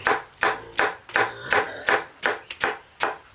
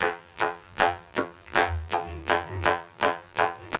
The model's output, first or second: second